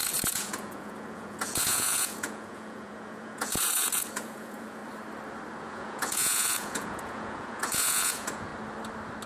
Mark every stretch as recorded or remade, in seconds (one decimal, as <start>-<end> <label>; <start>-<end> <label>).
0.0-4.8 remade; 4.8-5.6 recorded; 5.6-8.5 remade; 8.5-9.3 recorded